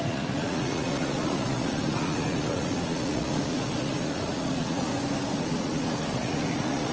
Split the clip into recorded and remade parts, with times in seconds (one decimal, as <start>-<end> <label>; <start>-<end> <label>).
0.0-4.9 remade; 4.9-5.4 recorded; 5.4-6.9 remade